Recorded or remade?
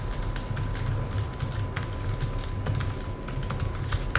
recorded